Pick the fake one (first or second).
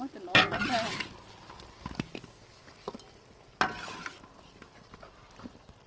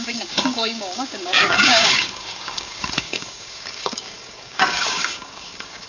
second